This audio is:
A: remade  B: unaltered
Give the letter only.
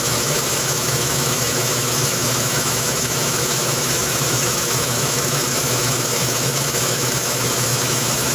A